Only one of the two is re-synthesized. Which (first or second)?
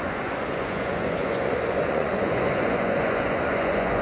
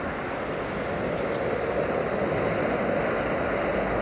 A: first